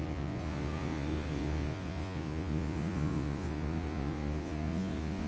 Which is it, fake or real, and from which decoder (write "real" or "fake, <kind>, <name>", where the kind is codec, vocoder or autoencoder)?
fake, vocoder, Vocos